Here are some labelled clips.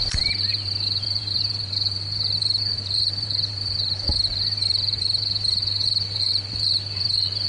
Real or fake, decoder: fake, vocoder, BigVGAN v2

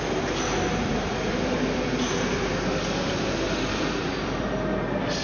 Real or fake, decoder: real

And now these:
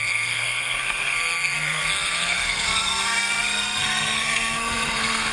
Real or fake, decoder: fake, codec, SNAC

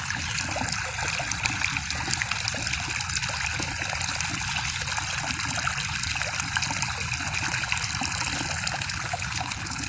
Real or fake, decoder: real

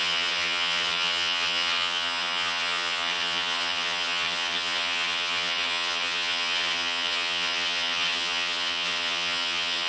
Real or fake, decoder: fake, vocoder, HiFi-GAN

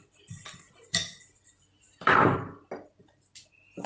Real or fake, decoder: fake, vocoder, BigVGAN v2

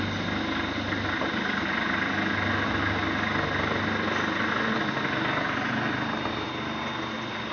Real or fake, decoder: real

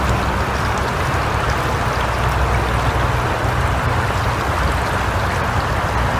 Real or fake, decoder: real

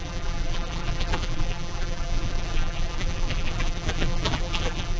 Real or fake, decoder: fake, vocoder, BigVGAN v2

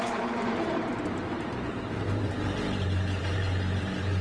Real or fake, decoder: fake, vocoder, BigVGAN v2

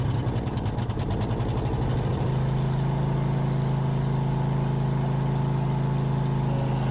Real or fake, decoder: real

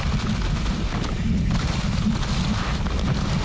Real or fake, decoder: real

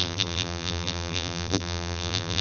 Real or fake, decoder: fake, vocoder, BigVGAN v2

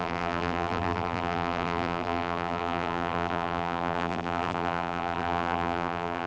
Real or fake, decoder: fake, vocoder, BigVGAN v2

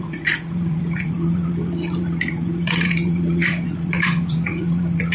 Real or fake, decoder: fake, vocoder, Vocos